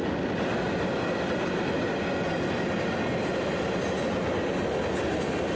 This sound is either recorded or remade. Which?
recorded